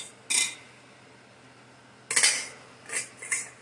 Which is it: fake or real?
real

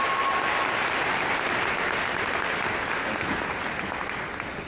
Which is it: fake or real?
real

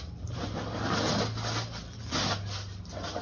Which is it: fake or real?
real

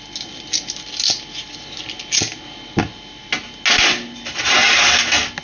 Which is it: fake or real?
real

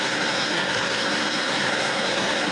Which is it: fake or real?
fake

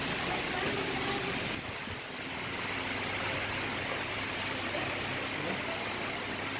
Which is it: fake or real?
real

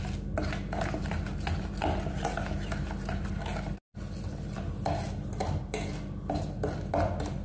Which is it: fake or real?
real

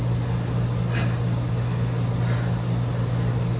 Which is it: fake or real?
real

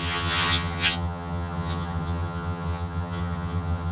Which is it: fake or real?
fake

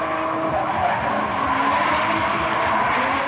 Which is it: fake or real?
real